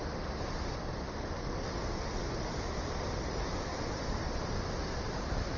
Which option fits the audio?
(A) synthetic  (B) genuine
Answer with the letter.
B